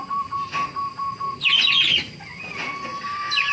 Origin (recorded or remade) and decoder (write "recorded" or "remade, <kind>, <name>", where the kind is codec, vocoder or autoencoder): recorded